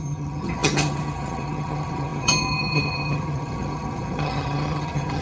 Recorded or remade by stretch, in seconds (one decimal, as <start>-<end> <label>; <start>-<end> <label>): 0.0-5.2 remade